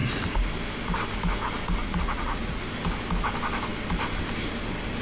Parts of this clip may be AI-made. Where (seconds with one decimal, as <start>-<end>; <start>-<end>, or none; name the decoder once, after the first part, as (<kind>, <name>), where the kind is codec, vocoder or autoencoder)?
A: 1.8-2.6 (vocoder, Vocos)